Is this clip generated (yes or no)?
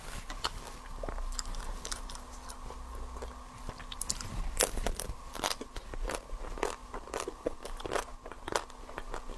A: no